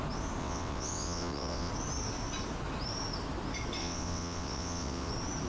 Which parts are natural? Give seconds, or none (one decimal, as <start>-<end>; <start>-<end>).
0.0-0.4; 1.7-3.8; 5.1-5.5